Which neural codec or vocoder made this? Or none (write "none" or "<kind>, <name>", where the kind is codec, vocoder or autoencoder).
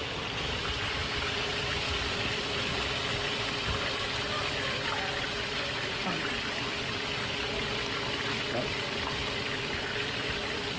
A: vocoder, BigVGAN v2